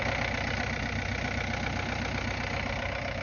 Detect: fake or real real